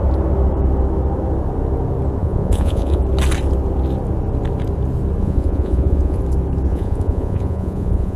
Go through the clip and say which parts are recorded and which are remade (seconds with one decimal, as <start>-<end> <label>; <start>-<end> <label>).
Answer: 0.0-2.2 recorded; 2.2-3.0 remade; 3.0-5.2 recorded; 5.2-6.2 remade; 6.2-6.7 recorded; 6.7-8.2 remade